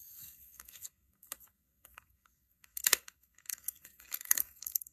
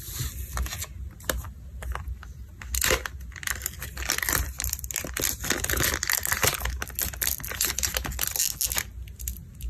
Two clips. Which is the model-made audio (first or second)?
first